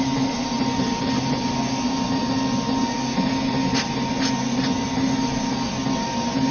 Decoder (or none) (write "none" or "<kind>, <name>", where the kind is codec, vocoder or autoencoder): none